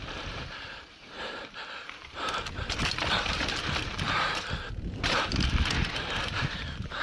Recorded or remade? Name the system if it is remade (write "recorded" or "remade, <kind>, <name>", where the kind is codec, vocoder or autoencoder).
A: remade, vocoder, BigVGAN v2